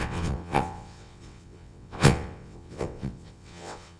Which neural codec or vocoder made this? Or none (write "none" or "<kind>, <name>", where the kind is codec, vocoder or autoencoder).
vocoder, WaveNeXt